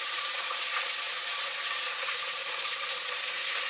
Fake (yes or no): yes